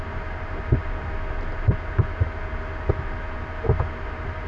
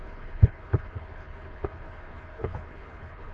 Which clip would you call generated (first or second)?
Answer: second